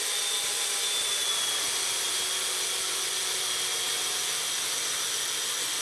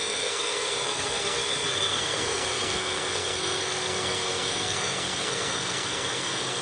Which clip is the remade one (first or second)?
second